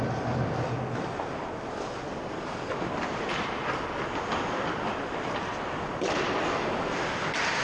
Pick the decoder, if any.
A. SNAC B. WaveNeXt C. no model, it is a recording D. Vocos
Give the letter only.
C